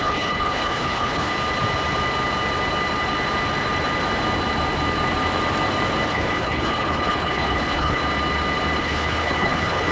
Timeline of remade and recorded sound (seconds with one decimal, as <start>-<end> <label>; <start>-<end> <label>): 0.0-1.3 remade; 1.3-6.1 recorded; 6.1-8.0 remade; 8.0-8.8 recorded; 8.8-9.9 remade